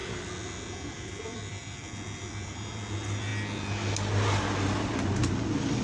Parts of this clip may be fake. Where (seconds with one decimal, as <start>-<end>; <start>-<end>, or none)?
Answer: none